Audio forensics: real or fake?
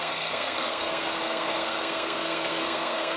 fake